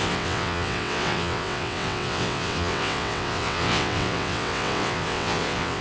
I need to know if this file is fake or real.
fake